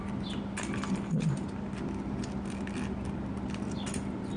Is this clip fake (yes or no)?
no